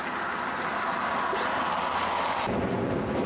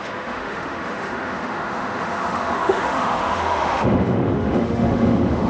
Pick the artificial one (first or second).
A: second